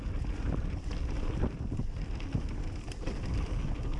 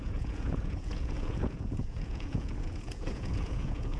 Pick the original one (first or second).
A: first